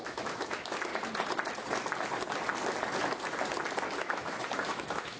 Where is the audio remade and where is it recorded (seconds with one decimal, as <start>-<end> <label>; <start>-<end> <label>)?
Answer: 0.0-0.9 remade; 0.9-4.0 recorded; 4.0-5.2 remade